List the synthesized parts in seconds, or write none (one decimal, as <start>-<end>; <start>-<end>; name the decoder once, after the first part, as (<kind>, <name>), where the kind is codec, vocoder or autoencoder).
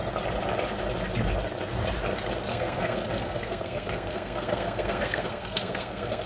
2.5-6.3 (codec, SNAC)